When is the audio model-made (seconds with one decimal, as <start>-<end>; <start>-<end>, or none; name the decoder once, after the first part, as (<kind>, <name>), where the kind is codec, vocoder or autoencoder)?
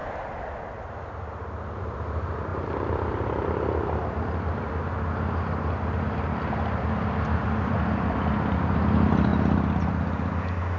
1.8-9.3 (vocoder, BigVGAN v2)